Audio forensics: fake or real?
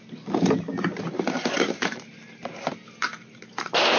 real